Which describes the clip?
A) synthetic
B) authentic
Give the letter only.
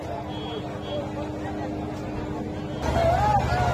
B